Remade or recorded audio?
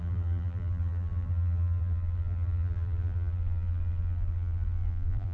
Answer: remade